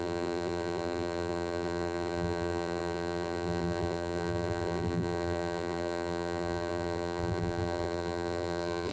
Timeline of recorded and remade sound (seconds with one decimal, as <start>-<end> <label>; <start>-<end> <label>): 0.0-8.9 remade

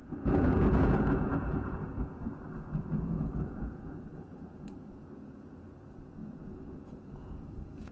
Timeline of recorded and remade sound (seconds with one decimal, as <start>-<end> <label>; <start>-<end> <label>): 0.0-7.9 remade

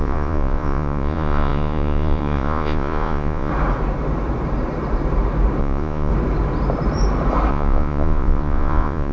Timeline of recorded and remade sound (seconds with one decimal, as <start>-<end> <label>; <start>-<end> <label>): 0.0-3.5 remade; 3.5-5.6 recorded; 5.6-6.1 remade; 6.1-7.5 recorded; 7.5-9.1 remade